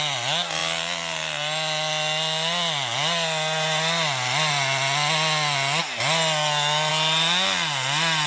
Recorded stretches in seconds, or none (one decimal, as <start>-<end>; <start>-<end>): 0.0-8.3